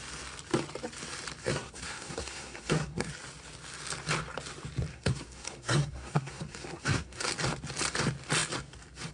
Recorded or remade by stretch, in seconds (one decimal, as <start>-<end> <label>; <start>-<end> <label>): 0.0-1.4 recorded; 1.4-3.1 remade; 3.1-4.9 recorded; 4.9-7.3 remade; 7.3-9.1 recorded